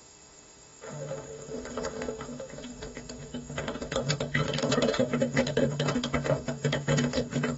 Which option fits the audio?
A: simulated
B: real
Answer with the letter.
A